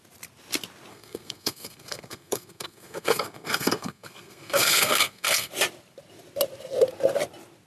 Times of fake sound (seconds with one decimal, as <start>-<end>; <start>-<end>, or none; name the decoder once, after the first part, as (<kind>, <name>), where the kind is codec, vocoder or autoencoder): 0.9-5.5 (codec, SNAC)